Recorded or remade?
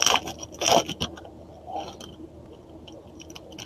recorded